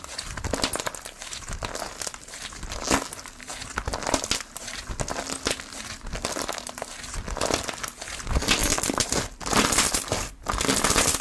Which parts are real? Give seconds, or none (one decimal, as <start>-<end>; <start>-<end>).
0.0-8.6; 10.4-11.2